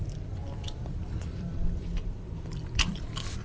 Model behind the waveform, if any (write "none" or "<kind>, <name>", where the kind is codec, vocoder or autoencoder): vocoder, BigVGAN v2